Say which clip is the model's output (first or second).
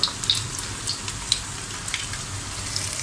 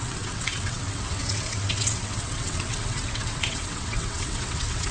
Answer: second